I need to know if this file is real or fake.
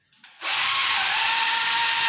real